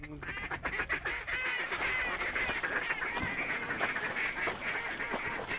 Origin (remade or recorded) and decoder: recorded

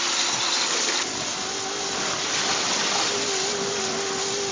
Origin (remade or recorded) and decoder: recorded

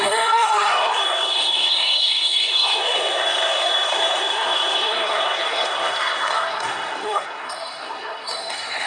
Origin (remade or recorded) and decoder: remade, codec, SNAC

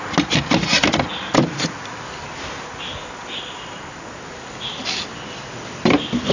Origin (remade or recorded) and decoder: recorded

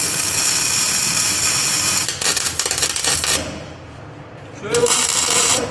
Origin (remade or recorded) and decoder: remade, vocoder, BigVGAN v2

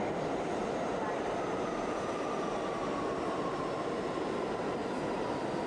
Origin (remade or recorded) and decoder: recorded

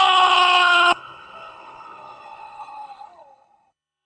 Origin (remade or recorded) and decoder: remade, codec, HILCodec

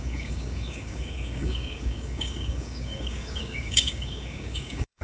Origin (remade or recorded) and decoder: remade, codec, DAC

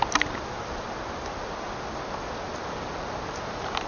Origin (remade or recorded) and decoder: recorded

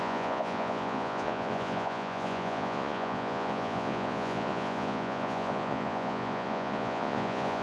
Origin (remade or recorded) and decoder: remade, vocoder, Vocos